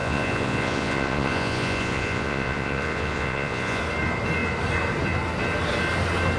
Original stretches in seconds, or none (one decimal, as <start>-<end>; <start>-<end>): 3.8-6.4